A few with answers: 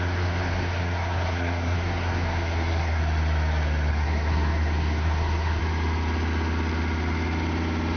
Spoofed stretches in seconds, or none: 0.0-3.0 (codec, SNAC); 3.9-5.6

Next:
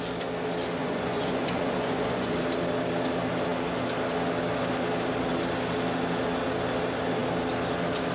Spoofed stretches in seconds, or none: 0.8-2.4 (vocoder, Vocos)

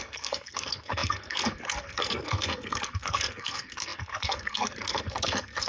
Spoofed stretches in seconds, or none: 0.0-5.7 (codec, SNAC)